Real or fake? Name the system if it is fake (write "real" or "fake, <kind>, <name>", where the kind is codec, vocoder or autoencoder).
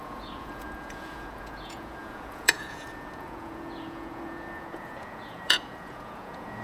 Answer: fake, vocoder, Vocos